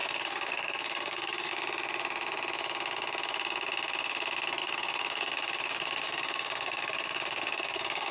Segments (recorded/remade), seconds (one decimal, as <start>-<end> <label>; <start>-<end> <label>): 0.0-1.5 remade; 1.5-4.6 recorded; 4.6-8.1 remade